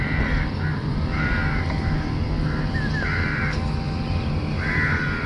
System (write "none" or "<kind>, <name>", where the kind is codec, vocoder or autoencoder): none